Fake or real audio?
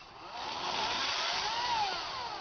real